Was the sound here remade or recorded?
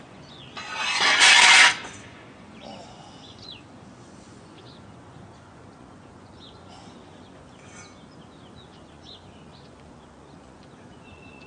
remade